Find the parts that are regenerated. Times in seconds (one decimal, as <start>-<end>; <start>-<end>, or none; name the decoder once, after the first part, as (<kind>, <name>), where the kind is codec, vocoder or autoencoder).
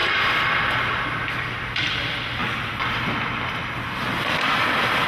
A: 0.0-5.1 (vocoder, BigVGAN v2)